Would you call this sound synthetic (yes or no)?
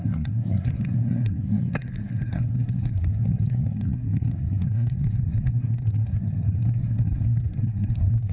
yes